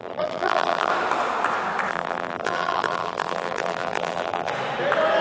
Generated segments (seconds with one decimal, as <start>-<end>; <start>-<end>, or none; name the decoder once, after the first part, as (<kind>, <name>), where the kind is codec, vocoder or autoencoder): 0.0-0.9 (vocoder, BigVGAN v2); 1.9-4.5